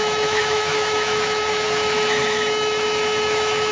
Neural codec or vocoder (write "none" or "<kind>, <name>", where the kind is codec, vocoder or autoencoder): autoencoder, DAC-VAE